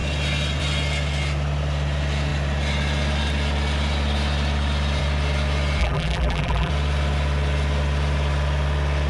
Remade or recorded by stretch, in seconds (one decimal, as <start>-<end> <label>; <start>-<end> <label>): 0.0-5.8 recorded; 5.8-6.7 remade; 6.7-9.1 recorded